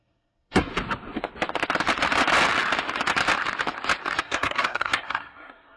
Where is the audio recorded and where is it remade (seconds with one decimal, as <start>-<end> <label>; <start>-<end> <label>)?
0.0-0.7 remade; 0.7-4.2 recorded; 4.2-5.8 remade